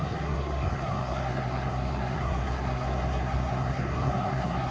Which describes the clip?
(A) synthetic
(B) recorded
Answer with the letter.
A